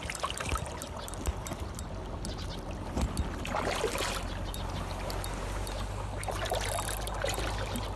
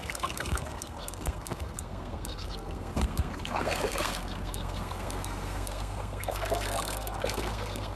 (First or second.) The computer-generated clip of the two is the second